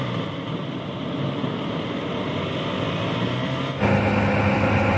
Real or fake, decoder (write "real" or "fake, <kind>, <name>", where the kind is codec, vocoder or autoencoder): real